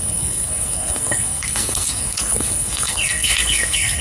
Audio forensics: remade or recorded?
remade